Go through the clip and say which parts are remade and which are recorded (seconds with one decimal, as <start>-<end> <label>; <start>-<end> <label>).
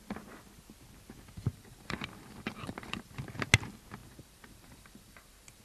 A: 0.0-1.5 recorded; 1.5-3.2 remade; 3.2-4.0 recorded; 4.0-5.6 remade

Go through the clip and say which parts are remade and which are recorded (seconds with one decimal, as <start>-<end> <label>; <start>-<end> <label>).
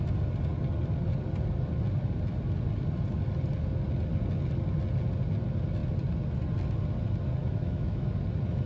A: 0.0-7.4 recorded; 7.4-8.1 remade; 8.1-8.7 recorded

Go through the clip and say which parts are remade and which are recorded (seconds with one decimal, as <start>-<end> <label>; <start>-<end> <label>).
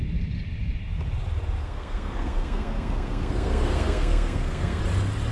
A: 0.0-1.6 recorded; 1.6-4.8 remade; 4.8-5.3 recorded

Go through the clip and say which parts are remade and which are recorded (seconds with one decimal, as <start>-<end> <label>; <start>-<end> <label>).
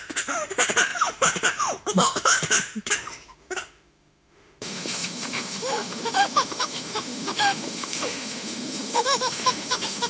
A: 0.0-10.1 remade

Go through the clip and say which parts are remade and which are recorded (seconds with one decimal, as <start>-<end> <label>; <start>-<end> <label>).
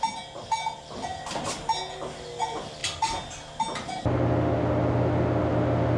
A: 0.0-6.0 recorded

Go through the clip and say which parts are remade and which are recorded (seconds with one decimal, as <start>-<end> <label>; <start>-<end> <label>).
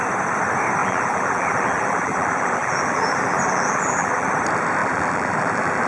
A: 0.0-0.8 recorded; 0.8-4.3 remade; 4.3-4.8 recorded; 4.8-5.9 remade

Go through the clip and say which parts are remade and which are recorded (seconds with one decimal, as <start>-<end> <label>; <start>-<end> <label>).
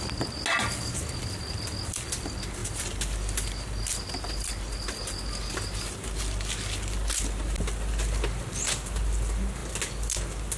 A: 0.0-10.6 recorded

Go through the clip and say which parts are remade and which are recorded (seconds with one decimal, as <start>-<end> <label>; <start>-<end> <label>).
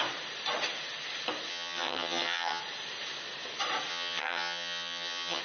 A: 0.0-1.5 recorded; 1.5-2.6 remade; 2.6-3.9 recorded; 3.9-5.4 remade